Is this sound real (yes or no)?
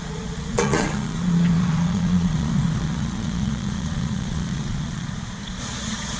no